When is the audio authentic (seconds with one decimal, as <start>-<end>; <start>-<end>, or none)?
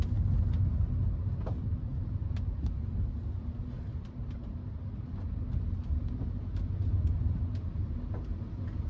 0.0-8.9